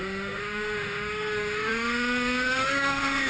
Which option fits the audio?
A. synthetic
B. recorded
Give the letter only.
A